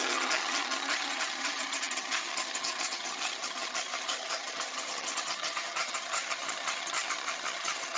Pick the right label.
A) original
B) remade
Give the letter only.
B